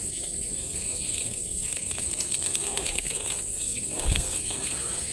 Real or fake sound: fake